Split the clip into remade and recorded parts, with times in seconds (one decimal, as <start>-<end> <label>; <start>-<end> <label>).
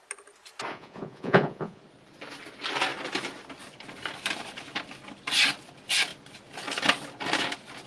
0.0-0.7 recorded; 0.7-1.8 remade; 1.8-7.9 recorded